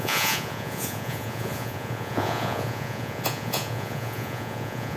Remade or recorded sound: remade